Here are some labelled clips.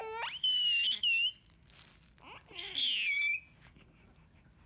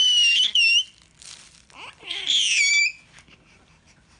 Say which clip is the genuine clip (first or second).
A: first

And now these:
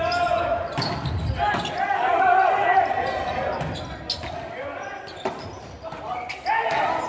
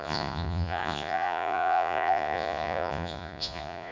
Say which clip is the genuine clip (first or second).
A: first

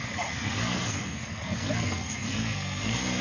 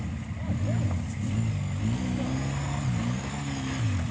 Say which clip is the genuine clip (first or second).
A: second